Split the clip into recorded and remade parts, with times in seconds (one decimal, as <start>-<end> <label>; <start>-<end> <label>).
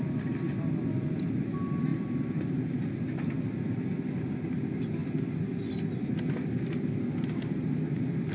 0.0-8.3 recorded